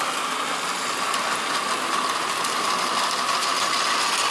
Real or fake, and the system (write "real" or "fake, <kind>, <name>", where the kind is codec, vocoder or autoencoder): real